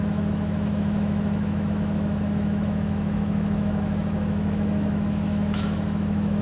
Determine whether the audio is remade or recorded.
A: remade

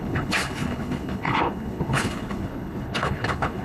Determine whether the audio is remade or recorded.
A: remade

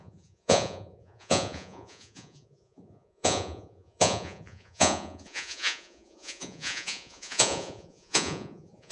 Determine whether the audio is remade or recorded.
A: remade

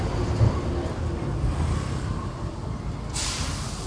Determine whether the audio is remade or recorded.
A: recorded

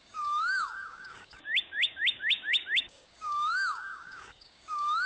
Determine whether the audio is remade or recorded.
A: remade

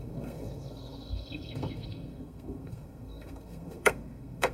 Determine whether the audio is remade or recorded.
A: remade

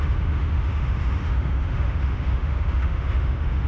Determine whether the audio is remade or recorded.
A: remade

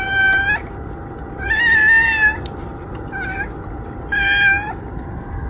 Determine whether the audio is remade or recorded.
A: recorded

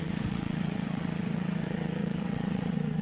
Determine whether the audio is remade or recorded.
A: remade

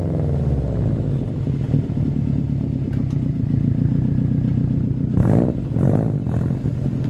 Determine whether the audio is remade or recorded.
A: recorded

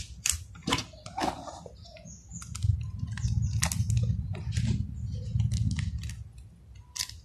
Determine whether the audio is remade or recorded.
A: recorded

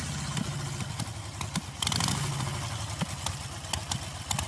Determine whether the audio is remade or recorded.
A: recorded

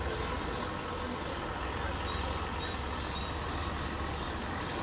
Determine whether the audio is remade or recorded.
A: recorded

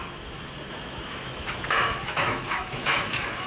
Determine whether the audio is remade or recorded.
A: remade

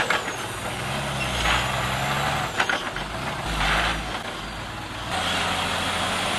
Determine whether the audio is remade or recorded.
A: recorded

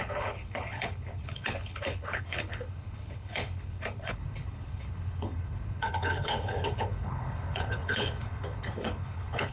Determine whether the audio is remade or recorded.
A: remade